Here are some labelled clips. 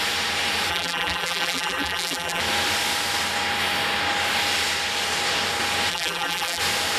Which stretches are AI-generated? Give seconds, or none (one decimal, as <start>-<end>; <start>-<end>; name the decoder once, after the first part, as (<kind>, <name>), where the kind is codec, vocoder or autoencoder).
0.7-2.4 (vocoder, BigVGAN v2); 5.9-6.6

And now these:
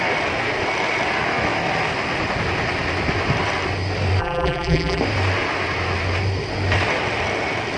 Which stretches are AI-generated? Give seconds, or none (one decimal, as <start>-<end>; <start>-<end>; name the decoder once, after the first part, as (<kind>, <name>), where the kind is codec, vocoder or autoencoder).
4.2-5.0 (vocoder, BigVGAN v2)

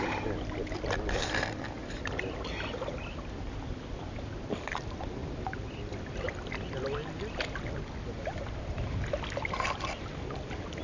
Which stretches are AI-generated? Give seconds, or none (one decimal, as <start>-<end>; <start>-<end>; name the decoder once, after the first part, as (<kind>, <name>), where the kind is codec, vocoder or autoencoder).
none

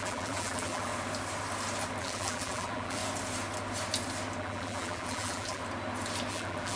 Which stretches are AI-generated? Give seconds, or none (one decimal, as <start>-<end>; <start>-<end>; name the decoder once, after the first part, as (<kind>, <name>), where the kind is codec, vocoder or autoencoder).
0.0-0.9 (vocoder, BigVGAN v2); 2.0-3.0; 4.4-5.6; 6.3-6.8